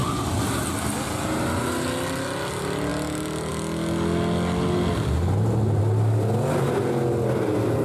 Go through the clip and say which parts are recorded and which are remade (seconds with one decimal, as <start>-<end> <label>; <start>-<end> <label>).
0.0-7.8 recorded